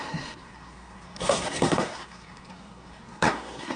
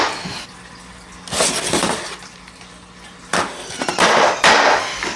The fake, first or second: first